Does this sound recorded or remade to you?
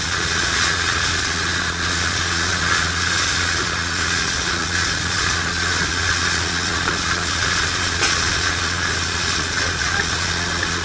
remade